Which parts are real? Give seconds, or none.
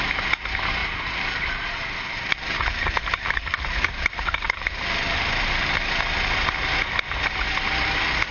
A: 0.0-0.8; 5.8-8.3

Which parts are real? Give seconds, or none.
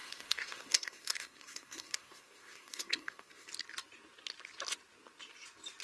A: 3.5-5.8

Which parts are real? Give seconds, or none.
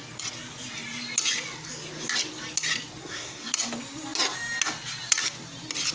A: 0.0-3.0; 3.5-5.9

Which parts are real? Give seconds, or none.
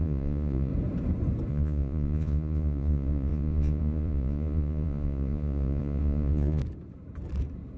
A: 0.7-1.5; 6.6-7.8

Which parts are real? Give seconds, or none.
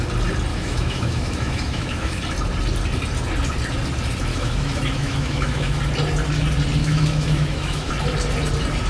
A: 0.0-0.5; 2.2-4.3; 5.8-6.8; 7.9-8.9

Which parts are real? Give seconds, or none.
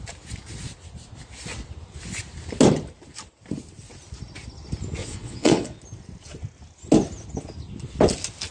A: 0.0-5.0; 5.8-8.5